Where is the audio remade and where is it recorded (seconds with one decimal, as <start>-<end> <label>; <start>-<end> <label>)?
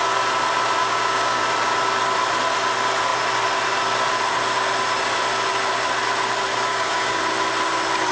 0.0-0.8 recorded; 0.8-1.4 remade; 1.4-6.7 recorded; 6.7-7.2 remade; 7.2-8.1 recorded